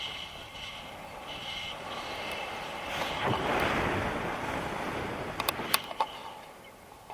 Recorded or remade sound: recorded